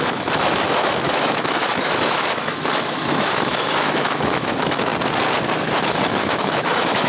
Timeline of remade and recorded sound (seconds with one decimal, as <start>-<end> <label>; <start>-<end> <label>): 0.0-4.9 remade; 4.9-5.8 recorded; 5.8-7.1 remade